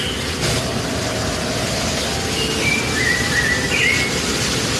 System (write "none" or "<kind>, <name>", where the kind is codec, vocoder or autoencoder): none